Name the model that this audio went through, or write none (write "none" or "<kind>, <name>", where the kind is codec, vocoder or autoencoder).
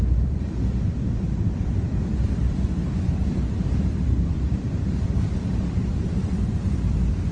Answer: vocoder, BigVGAN v2